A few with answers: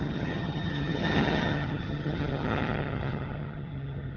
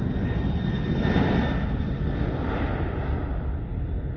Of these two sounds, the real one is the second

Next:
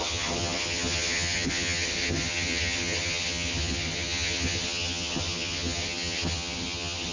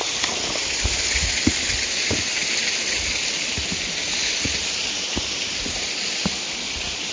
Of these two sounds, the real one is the second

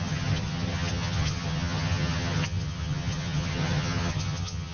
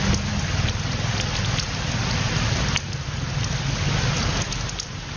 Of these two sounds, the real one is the second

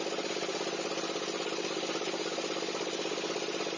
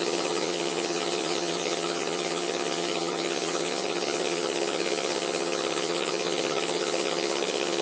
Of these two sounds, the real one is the first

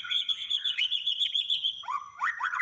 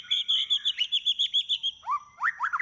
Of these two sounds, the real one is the second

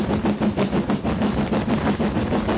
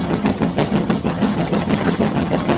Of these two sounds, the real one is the first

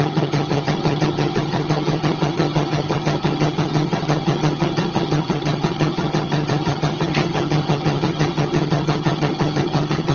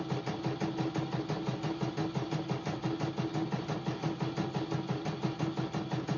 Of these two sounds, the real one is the second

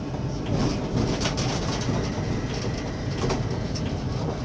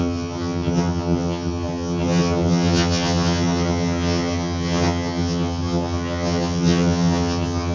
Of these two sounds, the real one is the first